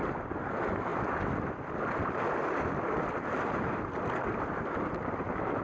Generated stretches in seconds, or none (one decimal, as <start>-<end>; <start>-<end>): none